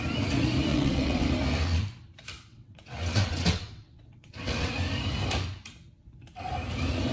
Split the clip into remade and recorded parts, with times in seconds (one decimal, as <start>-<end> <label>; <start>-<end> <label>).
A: 0.0-0.7 recorded; 0.7-1.3 remade; 1.3-2.5 recorded; 2.5-4.7 remade; 4.7-7.1 recorded